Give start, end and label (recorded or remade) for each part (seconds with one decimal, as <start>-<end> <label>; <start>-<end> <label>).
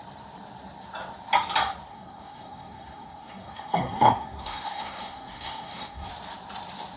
0.0-1.9 recorded; 1.9-6.1 remade; 6.1-7.0 recorded